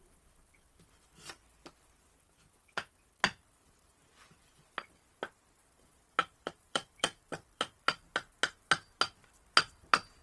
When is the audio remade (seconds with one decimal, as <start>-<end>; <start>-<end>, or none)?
6.2-8.1